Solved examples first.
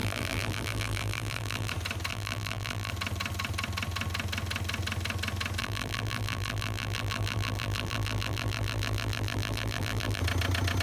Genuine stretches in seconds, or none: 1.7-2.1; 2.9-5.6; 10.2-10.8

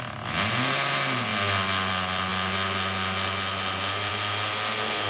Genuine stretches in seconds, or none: 0.0-5.1

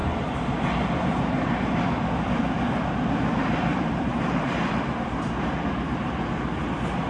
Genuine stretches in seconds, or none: 0.0-3.7; 5.0-7.1

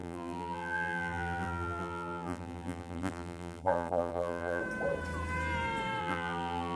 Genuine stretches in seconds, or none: 4.6-6.0